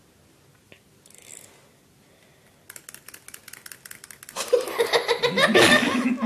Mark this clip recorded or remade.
recorded